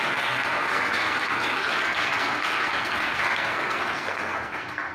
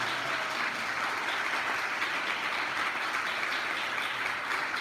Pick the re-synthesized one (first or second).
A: first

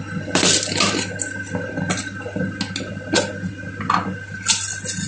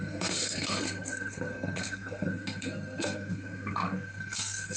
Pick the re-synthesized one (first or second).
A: second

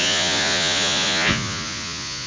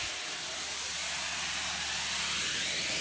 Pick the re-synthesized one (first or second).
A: first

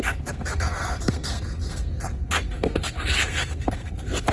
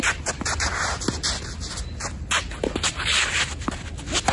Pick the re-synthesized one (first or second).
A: first